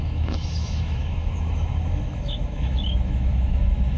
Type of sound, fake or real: fake